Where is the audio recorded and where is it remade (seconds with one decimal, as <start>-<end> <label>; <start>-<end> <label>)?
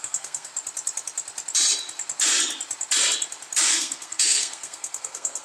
0.0-0.5 remade; 0.5-3.7 recorded; 3.7-5.4 remade